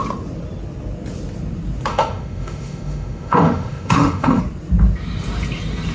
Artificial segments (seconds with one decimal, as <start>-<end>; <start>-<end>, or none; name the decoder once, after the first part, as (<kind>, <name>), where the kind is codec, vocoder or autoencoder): 1.9-4.4 (autoencoder, DAC-VAE)